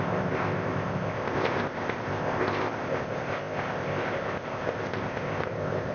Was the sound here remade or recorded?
remade